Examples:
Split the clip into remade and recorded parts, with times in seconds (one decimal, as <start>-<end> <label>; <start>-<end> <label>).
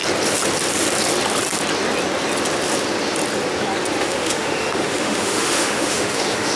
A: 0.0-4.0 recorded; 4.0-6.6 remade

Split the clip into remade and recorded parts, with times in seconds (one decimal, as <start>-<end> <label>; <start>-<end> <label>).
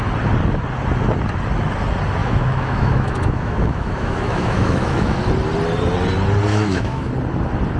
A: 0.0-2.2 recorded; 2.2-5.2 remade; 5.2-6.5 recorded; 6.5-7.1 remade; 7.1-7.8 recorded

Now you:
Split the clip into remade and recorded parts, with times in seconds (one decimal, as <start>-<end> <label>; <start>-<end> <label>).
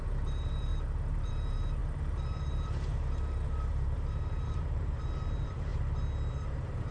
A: 0.0-5.7 remade; 5.7-6.3 recorded; 6.3-6.9 remade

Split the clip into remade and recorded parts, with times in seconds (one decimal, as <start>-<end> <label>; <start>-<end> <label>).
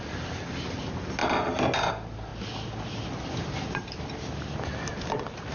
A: 0.0-5.5 recorded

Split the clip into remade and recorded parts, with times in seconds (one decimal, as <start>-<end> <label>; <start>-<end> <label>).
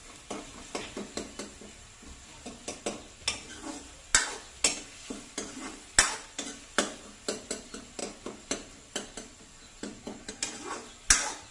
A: 0.0-11.5 recorded